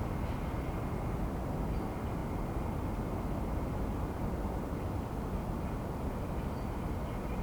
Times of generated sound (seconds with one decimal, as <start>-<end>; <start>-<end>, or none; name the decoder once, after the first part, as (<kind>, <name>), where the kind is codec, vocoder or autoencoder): none